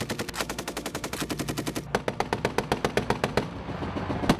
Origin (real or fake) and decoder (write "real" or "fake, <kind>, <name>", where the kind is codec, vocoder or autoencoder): real